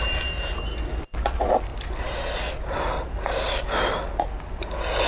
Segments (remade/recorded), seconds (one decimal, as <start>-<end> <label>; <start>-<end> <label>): 0.0-5.1 recorded